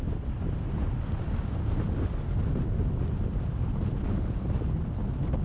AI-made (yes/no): no